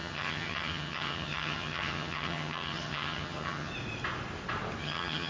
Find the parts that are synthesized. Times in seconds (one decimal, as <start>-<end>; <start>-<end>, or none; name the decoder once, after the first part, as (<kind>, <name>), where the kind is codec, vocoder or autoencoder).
0.0-3.7 (vocoder, HiFi-GAN); 4.8-5.3